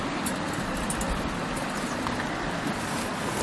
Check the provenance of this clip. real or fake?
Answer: real